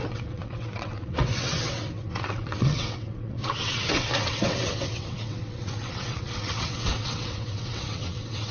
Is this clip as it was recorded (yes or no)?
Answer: no